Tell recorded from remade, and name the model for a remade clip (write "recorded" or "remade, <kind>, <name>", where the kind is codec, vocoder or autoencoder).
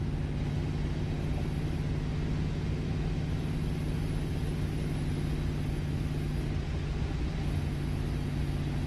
recorded